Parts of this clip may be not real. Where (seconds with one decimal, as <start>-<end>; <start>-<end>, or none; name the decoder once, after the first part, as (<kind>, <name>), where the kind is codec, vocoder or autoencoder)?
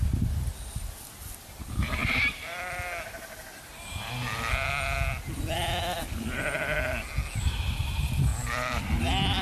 6.0-6.9 (vocoder, BigVGAN v2); 8.3-8.9